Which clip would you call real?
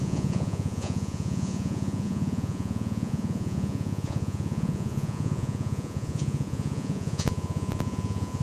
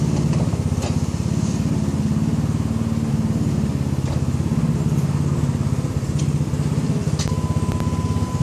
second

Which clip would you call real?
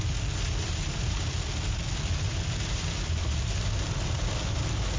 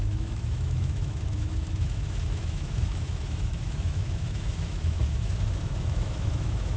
first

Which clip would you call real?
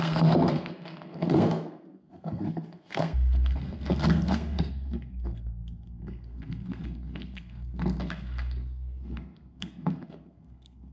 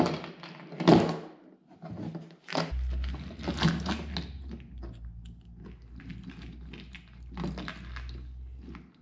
second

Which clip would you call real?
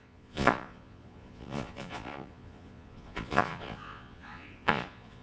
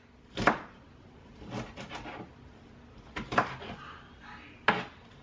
second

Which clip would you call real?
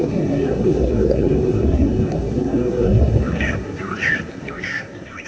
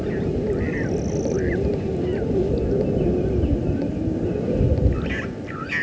second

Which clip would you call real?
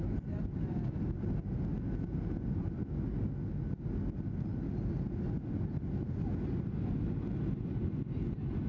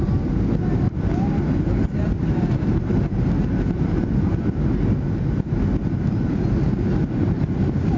first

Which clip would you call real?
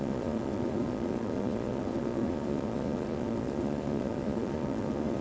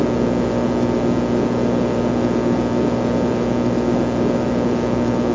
second